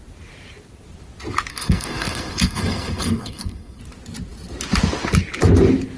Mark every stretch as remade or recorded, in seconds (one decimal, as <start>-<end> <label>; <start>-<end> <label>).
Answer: 0.0-1.5 recorded; 1.5-3.8 remade; 3.8-6.0 recorded